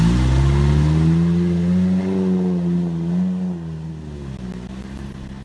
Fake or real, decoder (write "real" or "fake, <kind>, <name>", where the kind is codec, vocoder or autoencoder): real